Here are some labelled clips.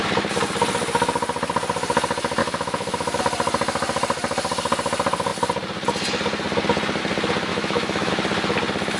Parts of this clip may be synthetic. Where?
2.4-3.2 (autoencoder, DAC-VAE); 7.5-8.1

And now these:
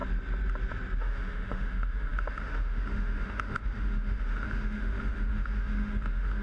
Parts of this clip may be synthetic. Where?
1.0-6.4 (autoencoder, DAC-VAE)

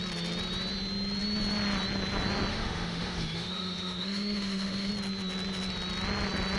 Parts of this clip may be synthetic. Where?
2.5-4.9 (autoencoder, DAC-VAE)

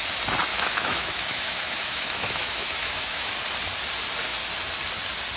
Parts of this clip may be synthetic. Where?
0.5-3.3 (autoencoder, DAC-VAE)